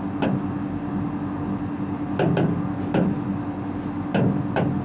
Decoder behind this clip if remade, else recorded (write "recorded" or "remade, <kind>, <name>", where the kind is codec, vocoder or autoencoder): recorded